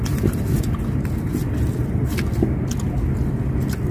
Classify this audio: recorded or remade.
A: recorded